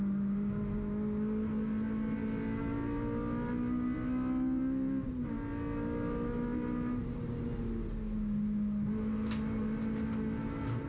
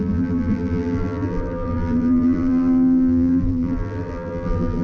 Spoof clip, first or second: second